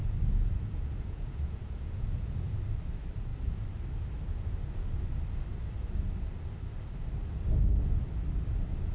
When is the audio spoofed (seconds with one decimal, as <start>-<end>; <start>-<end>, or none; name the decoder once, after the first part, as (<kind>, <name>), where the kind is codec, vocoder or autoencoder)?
0.0-2.4 (vocoder, Vocos)